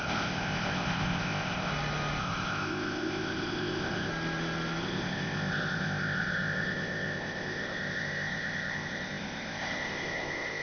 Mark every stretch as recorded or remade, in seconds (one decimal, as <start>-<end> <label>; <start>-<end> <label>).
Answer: 0.0-1.7 remade; 1.7-2.2 recorded; 2.2-4.1 remade; 4.1-4.8 recorded; 4.8-10.6 remade